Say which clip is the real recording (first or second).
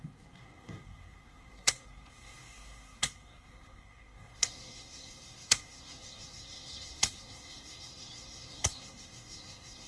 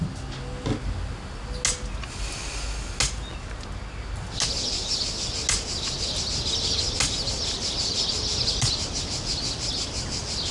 second